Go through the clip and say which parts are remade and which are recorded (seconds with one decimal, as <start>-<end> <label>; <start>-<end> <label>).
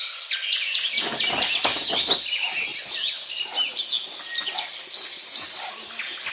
0.0-6.3 recorded